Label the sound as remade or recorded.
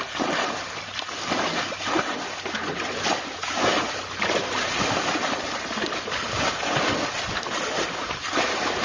recorded